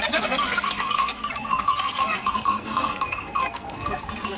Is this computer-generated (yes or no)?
yes